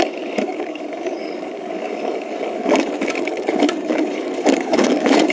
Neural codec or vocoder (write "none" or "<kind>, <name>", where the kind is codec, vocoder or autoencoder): codec, DAC